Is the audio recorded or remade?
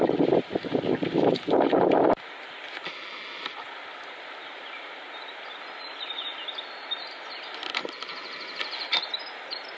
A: recorded